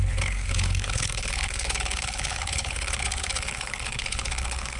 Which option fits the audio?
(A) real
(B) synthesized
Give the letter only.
B